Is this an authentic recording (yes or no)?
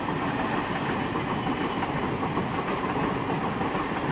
yes